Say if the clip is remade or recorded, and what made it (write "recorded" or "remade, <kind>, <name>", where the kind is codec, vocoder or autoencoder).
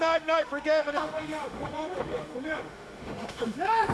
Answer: remade, autoencoder, DAC-VAE